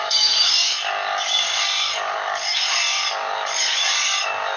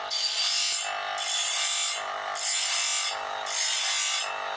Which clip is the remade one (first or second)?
first